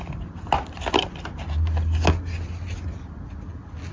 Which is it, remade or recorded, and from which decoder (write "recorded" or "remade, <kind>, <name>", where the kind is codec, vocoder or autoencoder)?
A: recorded